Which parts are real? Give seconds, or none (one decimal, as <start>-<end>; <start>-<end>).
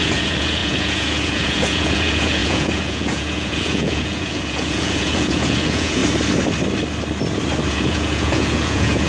6.0-7.7